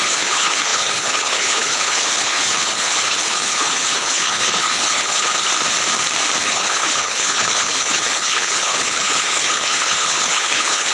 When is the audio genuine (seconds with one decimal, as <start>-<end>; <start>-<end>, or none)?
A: 5.5-6.4